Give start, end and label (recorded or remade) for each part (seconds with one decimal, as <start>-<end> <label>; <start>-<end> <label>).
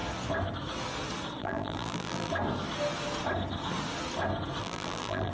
0.0-1.4 recorded; 1.4-2.3 remade; 2.3-4.6 recorded; 4.6-5.3 remade